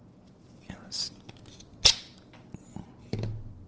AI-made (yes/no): no